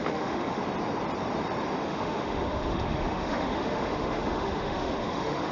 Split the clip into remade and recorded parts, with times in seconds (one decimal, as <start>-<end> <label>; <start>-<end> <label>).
0.0-0.6 remade; 0.6-1.9 recorded; 1.9-5.5 remade

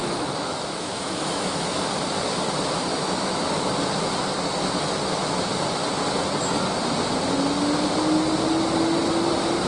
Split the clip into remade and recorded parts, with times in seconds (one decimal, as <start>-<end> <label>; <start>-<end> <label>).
0.0-1.9 remade; 1.9-2.9 recorded; 2.9-3.7 remade; 3.7-9.7 recorded

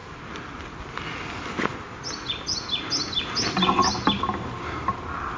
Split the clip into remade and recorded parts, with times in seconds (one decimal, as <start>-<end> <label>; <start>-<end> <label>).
0.0-5.4 recorded

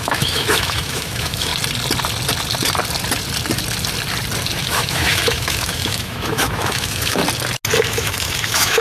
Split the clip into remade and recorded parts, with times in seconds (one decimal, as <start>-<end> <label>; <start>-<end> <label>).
0.0-1.5 remade; 1.5-4.6 recorded; 4.6-7.2 remade; 7.2-7.8 recorded; 7.8-8.8 remade

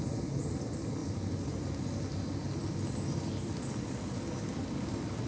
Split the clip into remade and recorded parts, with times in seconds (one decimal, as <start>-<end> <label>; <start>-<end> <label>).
0.0-5.3 recorded

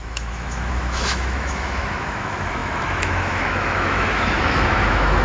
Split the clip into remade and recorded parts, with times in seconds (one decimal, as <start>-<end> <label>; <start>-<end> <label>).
0.0-5.2 remade

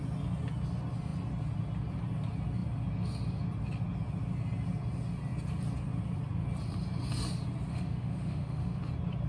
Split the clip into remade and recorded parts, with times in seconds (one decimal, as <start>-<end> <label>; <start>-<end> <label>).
0.0-7.7 recorded; 7.7-8.8 remade; 8.8-9.3 recorded

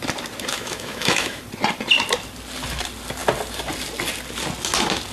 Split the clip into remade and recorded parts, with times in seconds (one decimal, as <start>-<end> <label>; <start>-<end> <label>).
0.0-0.5 recorded; 0.5-1.4 remade; 1.4-5.1 recorded